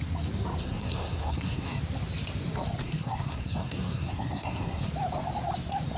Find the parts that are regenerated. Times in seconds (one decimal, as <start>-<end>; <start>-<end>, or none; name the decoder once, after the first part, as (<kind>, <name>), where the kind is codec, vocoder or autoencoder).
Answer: 0.6-1.8 (codec, SNAC); 2.8-4.9